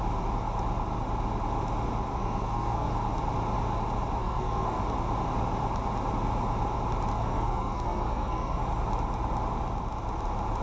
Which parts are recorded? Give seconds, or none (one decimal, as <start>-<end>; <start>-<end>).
0.0-2.1; 2.9-4.2; 4.8-7.1; 8.6-10.6